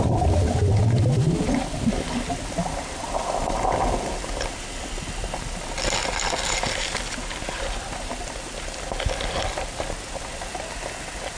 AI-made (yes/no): no